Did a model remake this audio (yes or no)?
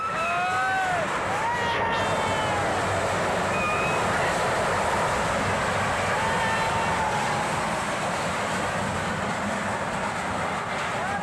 no